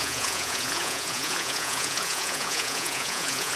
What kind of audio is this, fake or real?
fake